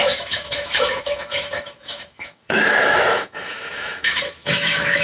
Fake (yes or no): yes